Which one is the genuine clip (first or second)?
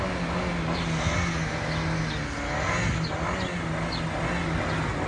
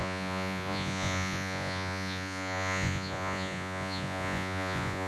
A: first